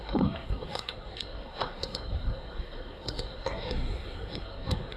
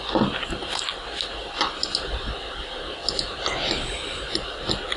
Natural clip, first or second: second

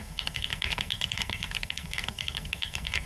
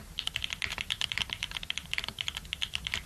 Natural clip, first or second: second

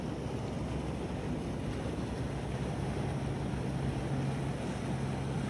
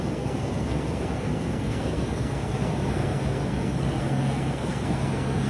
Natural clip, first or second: first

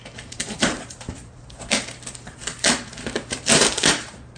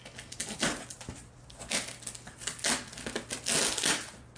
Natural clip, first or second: second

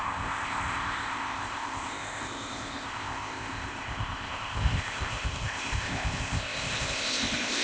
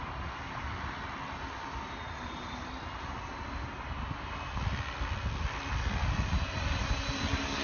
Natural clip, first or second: second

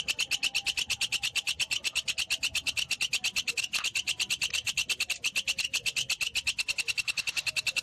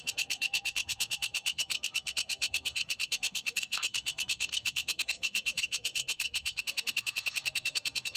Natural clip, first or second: first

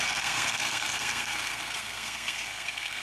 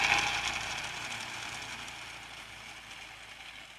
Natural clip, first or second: second